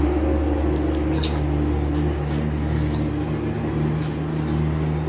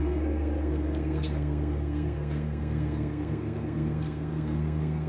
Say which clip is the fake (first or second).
second